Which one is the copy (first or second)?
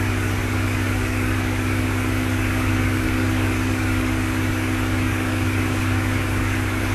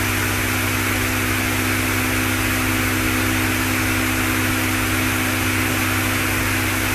first